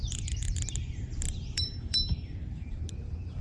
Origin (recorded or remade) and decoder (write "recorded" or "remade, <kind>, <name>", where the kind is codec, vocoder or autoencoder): remade, vocoder, BigVGAN v2